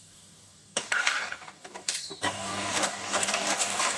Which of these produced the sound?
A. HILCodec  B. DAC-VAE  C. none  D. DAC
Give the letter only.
D